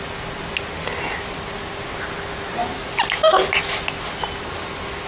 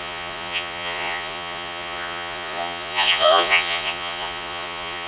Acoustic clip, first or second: first